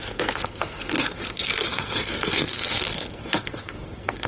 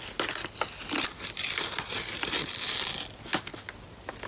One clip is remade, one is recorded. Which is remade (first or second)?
first